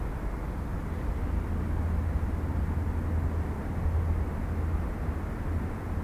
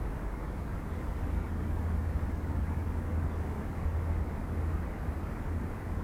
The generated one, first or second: second